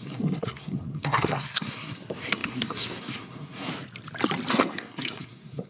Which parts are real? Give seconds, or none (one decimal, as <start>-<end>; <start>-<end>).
3.7-4.5